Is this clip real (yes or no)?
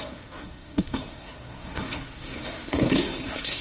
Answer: no